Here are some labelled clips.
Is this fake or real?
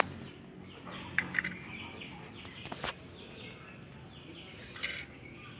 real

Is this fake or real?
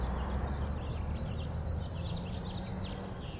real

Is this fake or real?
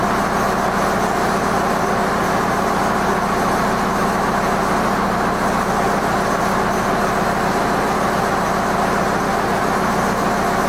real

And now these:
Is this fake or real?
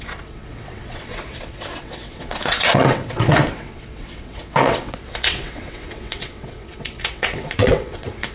fake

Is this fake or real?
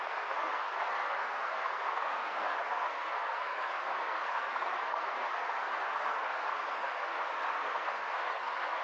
fake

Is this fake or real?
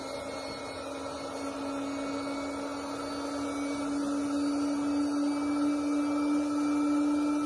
real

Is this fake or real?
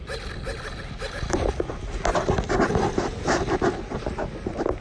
real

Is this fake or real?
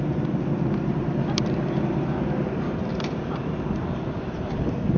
real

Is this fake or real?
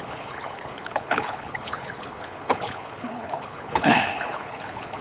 fake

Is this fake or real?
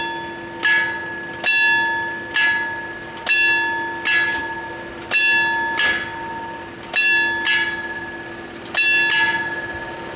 real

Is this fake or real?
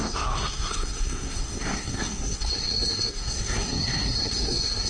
fake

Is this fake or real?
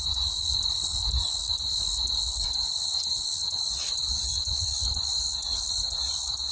real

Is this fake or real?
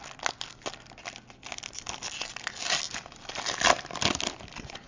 real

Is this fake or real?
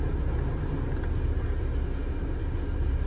real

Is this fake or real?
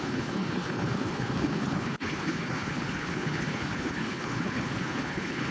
fake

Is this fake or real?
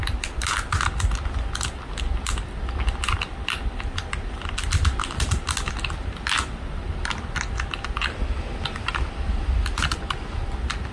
real